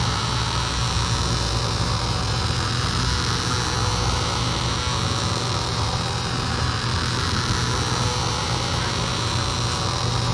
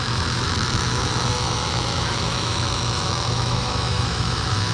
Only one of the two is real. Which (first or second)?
first